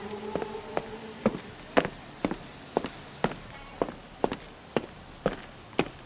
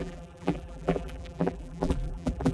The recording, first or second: first